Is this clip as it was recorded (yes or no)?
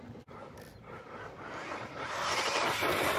yes